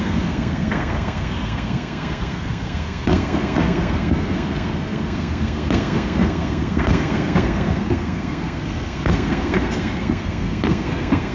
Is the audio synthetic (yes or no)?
yes